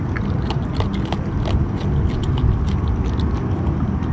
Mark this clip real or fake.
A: real